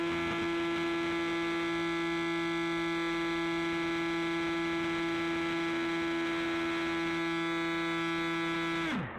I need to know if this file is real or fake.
real